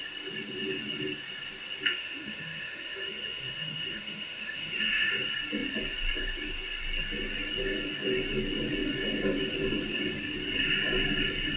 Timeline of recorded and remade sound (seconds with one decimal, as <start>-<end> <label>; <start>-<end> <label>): 0.0-1.9 recorded; 1.9-5.1 remade; 5.1-11.6 recorded